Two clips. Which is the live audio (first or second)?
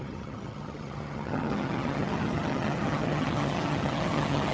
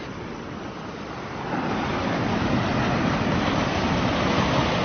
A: second